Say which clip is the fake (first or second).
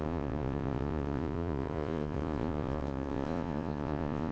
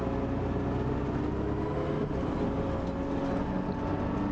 first